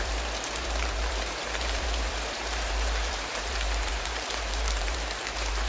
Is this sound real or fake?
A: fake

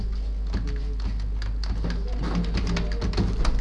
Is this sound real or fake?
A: real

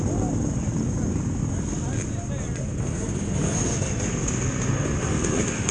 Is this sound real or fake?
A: real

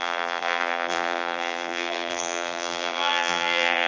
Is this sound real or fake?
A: fake